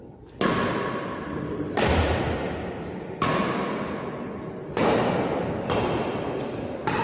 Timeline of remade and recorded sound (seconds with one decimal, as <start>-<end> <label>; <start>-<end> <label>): 0.0-7.0 recorded